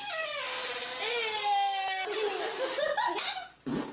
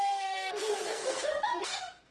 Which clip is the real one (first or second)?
first